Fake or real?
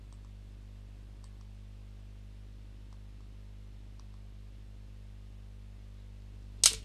real